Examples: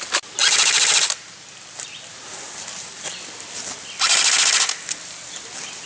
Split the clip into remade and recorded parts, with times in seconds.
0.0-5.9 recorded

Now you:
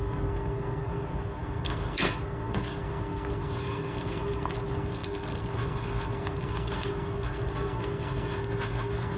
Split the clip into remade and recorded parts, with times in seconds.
0.0-9.2 remade

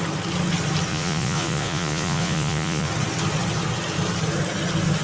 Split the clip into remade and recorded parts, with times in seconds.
0.0-0.9 recorded; 0.9-2.9 remade; 2.9-5.0 recorded

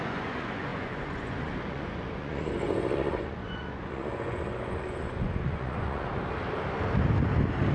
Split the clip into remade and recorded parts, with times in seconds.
0.0-6.1 remade; 6.1-7.7 recorded

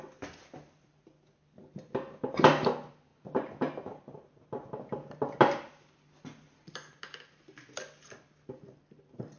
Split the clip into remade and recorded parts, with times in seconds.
0.0-9.4 recorded

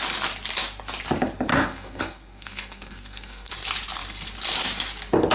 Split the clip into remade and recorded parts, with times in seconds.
0.0-1.5 recorded; 1.5-3.5 remade; 3.5-5.3 recorded